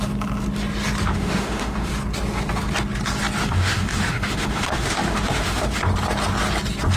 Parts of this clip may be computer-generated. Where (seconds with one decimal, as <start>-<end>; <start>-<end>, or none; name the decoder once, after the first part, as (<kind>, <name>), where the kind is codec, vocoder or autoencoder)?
1.1-1.9 (autoencoder, DAC-VAE); 3.4-5.8

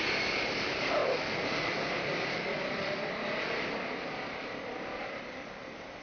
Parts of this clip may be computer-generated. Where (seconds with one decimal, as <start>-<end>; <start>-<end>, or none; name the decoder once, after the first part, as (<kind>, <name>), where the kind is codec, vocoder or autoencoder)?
none

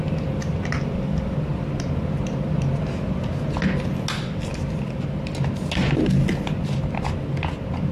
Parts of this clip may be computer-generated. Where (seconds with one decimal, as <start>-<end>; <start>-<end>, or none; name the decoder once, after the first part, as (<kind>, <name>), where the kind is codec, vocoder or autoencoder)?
none

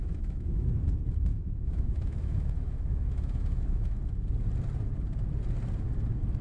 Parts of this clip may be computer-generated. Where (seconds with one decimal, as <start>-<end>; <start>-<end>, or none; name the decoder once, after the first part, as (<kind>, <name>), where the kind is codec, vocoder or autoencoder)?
0.0-0.7 (autoencoder, DAC-VAE); 1.3-4.0